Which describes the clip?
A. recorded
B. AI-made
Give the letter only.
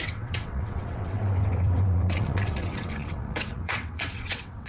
B